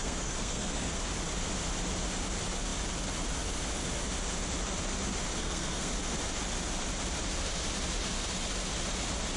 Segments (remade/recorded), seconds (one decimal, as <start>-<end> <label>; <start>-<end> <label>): 0.0-0.9 remade; 0.9-5.4 recorded; 5.4-5.9 remade; 5.9-9.4 recorded

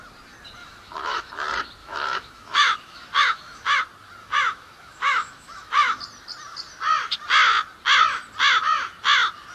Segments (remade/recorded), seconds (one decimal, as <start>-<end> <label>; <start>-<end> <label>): 0.0-0.6 recorded; 0.6-1.3 remade; 1.3-1.8 recorded; 1.8-3.8 remade; 3.8-4.2 recorded; 4.2-6.0 remade; 6.0-9.5 recorded

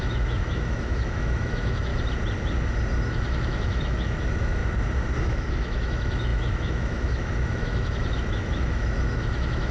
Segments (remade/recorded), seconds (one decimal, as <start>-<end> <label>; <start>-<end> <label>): 0.0-1.9 remade; 1.9-3.1 recorded; 3.1-4.6 remade; 4.6-5.2 recorded; 5.2-9.7 remade

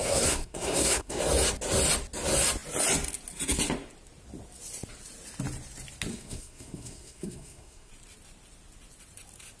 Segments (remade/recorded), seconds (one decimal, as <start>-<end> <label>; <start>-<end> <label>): 0.0-1.2 remade; 1.2-6.1 recorded; 6.1-7.9 remade; 7.9-9.6 recorded

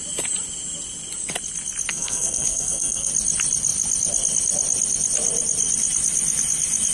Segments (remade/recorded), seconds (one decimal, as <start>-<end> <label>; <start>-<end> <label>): 0.0-1.9 recorded; 1.9-3.1 remade; 3.1-6.9 recorded